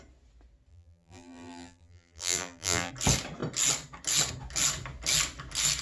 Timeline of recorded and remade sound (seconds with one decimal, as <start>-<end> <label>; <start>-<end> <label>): 0.0-0.7 recorded; 0.7-2.9 remade; 2.9-5.8 recorded